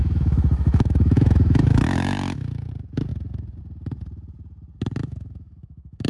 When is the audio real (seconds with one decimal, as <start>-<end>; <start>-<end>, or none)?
2.7-5.0